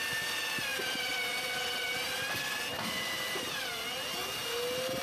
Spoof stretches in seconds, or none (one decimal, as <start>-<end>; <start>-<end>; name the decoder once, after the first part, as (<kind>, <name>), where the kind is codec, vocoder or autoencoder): 0.7-3.7 (vocoder, BigVGAN v2)